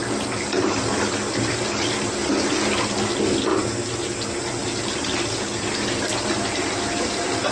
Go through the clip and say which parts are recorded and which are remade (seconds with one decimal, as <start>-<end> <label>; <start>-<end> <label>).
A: 0.0-7.5 recorded